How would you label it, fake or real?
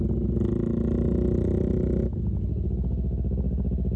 real